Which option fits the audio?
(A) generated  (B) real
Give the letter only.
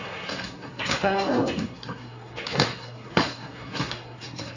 A